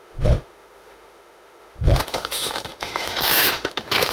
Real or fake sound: fake